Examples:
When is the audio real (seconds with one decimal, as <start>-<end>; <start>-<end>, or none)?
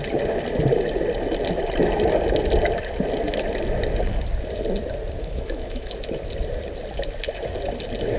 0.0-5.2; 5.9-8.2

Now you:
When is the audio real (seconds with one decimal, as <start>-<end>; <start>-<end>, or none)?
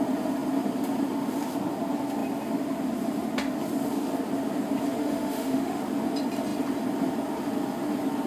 0.0-5.0; 5.8-8.3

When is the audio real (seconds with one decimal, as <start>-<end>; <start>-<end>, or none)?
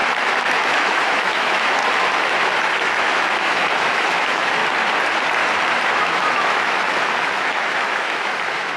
1.8-2.4; 4.6-5.9